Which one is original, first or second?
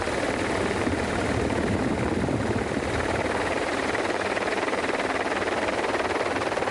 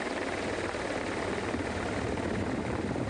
second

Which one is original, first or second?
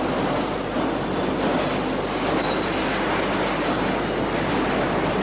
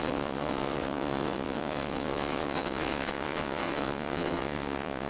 first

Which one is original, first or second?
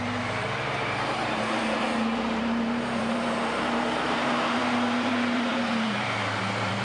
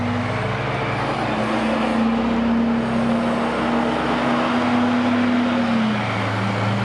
second